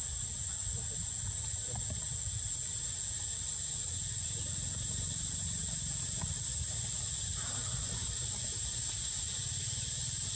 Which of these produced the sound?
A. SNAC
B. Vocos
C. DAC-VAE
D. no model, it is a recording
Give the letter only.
D